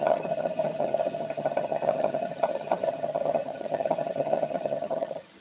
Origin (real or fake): fake